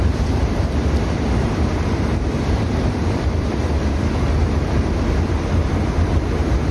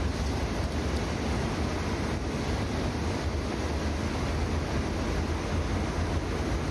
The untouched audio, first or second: second